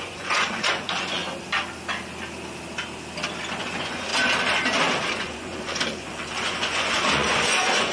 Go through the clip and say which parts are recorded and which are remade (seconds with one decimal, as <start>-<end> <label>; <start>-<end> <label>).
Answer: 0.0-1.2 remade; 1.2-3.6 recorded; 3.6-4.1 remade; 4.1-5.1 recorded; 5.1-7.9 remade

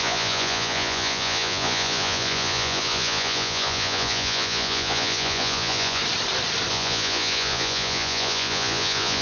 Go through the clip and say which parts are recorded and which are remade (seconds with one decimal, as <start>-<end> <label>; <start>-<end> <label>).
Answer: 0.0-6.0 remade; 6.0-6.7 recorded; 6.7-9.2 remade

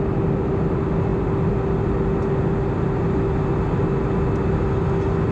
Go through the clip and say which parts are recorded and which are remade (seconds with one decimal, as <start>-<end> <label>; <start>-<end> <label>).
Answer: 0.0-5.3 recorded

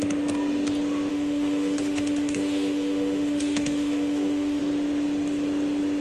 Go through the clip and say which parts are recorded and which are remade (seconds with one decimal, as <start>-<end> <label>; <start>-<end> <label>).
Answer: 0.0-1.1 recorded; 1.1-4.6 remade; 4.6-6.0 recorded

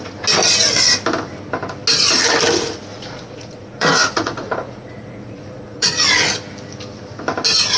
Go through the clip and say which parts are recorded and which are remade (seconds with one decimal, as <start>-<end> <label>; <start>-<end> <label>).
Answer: 0.0-2.9 recorded; 2.9-5.9 remade; 5.9-7.8 recorded

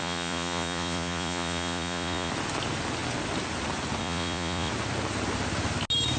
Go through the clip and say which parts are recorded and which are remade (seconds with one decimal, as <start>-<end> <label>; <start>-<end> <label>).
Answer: 0.0-2.3 remade; 2.3-4.0 recorded; 4.0-4.7 remade; 4.7-6.2 recorded